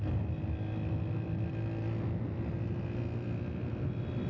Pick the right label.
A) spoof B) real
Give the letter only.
B